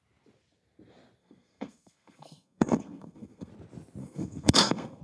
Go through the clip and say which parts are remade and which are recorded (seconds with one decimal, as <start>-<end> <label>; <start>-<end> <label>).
0.0-1.2 recorded; 1.2-3.5 remade; 3.5-4.0 recorded; 4.0-5.0 remade